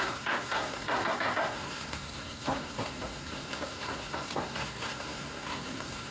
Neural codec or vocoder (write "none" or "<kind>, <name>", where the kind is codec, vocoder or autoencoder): codec, SNAC